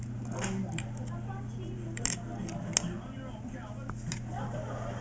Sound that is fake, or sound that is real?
real